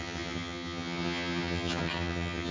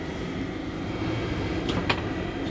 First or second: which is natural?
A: second